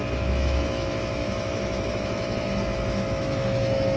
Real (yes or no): no